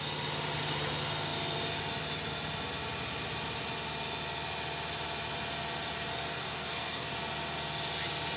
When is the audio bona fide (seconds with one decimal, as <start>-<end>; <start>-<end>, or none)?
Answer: 0.0-6.1; 7.1-8.4